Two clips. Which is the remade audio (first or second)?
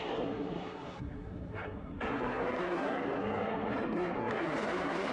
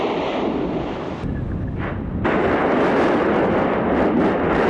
first